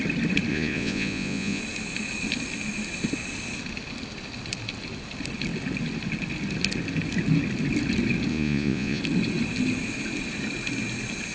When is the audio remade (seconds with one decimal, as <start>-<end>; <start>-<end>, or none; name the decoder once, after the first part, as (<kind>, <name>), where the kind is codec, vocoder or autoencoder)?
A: 0.5-1.6 (vocoder, Vocos); 8.3-9.0